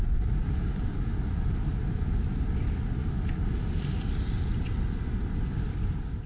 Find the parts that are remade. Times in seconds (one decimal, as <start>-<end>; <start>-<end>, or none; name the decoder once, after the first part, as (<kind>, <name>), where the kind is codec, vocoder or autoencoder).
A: 0.4-1.7 (codec, DAC); 3.0-3.7